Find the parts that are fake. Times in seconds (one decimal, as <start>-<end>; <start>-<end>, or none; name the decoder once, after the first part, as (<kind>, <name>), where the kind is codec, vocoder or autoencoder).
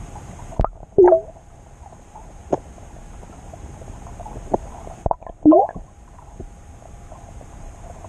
0.0-2.4 (vocoder, BigVGAN v2); 3.2-8.1